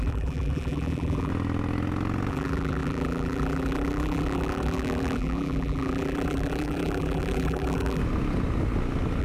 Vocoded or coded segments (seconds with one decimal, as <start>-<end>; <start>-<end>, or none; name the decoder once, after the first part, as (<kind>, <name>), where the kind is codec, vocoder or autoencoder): 0.0-1.3 (vocoder, BigVGAN v2); 2.3-8.0